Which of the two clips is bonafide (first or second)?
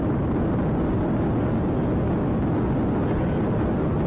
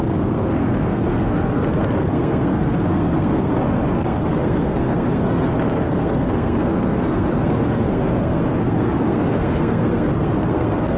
first